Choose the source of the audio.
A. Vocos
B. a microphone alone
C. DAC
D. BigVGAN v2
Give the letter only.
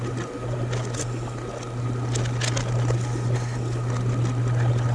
B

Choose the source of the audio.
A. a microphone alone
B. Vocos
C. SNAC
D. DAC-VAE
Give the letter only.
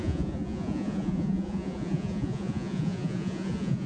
B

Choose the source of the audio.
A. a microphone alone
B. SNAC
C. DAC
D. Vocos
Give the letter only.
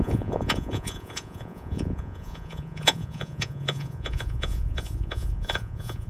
D